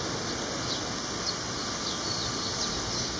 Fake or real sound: real